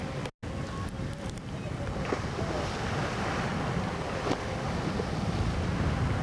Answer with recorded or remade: recorded